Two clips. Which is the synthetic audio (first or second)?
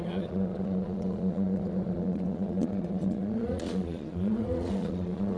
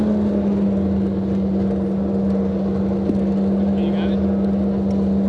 first